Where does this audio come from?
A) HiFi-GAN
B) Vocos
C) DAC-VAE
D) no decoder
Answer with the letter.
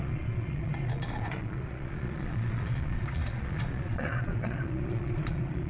B